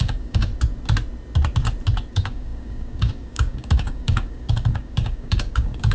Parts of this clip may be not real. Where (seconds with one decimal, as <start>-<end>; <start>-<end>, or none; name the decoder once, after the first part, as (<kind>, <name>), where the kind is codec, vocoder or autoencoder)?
0.0-0.5 (codec, DAC); 2.1-5.9